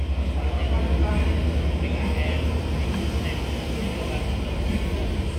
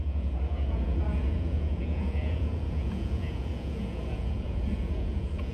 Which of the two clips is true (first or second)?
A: first